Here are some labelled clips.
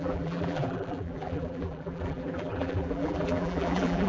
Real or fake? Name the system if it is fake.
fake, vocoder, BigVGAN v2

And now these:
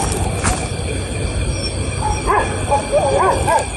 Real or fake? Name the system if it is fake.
real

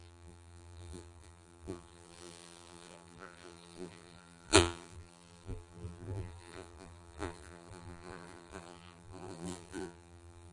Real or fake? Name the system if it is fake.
fake, vocoder, BigVGAN v2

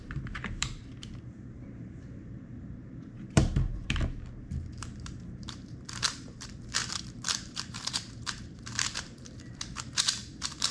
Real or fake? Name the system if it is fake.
fake, vocoder, BigVGAN v2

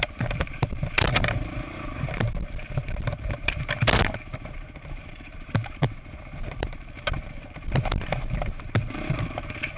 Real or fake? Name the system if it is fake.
fake, vocoder, BigVGAN v2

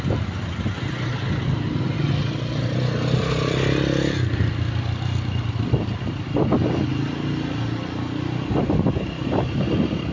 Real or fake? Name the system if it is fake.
real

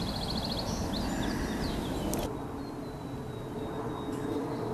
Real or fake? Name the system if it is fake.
real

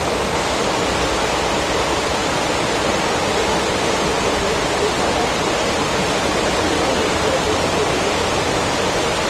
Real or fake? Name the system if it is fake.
real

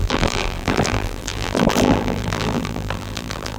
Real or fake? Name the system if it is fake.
fake, vocoder, BigVGAN v2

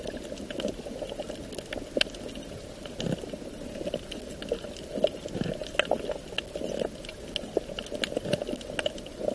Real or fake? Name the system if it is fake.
real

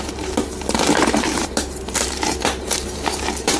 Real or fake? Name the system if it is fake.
fake, vocoder, BigVGAN v2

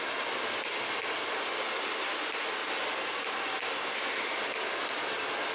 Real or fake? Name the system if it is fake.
real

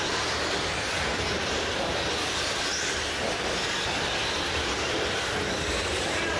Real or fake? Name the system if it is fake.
fake, vocoder, BigVGAN v2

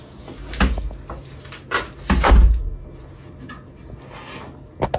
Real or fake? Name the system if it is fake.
real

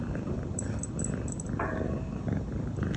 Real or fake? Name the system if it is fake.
fake, vocoder, BigVGAN v2